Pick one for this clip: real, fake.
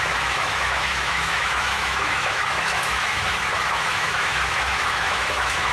fake